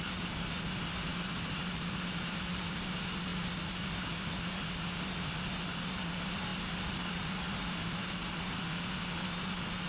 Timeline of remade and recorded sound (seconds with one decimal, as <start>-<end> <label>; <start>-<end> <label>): 0.0-1.1 recorded; 1.1-2.9 remade; 2.9-9.9 recorded